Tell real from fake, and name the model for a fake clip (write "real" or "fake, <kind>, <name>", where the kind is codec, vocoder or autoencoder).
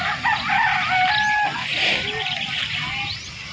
real